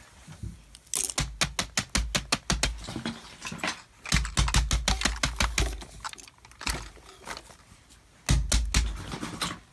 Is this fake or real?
real